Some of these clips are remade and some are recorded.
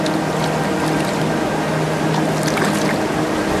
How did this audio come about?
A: recorded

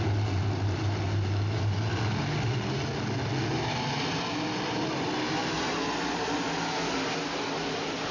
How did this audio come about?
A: recorded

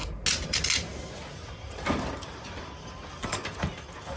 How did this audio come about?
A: recorded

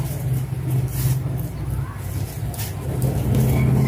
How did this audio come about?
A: recorded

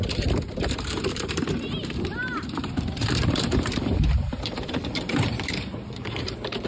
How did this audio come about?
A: remade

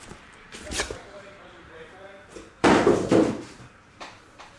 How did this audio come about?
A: remade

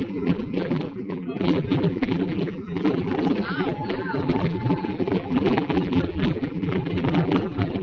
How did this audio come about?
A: remade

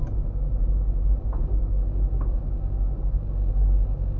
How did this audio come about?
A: recorded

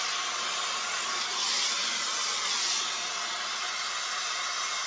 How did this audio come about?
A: recorded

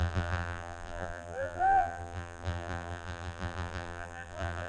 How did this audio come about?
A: remade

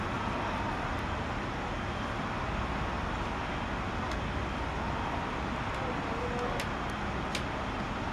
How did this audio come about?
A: recorded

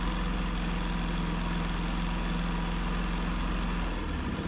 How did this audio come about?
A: recorded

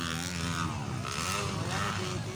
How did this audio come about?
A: recorded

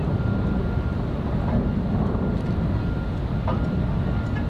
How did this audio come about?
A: recorded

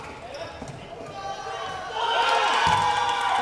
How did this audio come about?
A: recorded